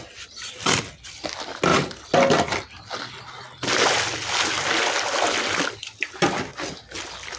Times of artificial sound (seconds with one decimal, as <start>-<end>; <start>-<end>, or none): none